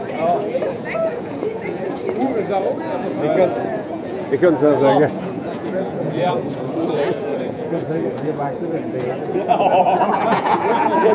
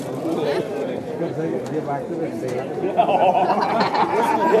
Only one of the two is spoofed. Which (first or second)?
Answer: first